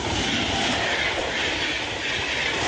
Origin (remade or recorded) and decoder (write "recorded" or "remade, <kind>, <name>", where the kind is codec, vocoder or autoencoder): recorded